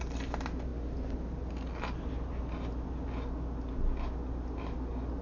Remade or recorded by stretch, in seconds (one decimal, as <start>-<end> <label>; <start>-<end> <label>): 0.0-5.2 recorded